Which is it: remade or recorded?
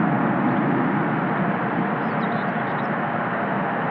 recorded